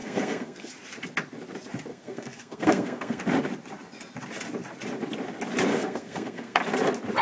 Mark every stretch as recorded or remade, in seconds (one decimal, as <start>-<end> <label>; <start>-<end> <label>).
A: 0.0-0.7 remade; 0.7-1.9 recorded; 1.9-3.2 remade; 3.2-5.7 recorded; 5.7-6.6 remade; 6.6-7.2 recorded